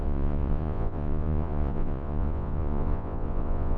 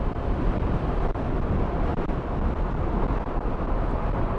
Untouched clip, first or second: second